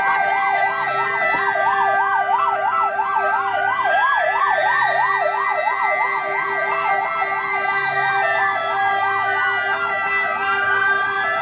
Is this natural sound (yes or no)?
yes